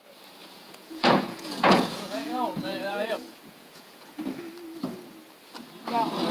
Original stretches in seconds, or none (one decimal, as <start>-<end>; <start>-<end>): 0.0-0.4; 4.2-6.3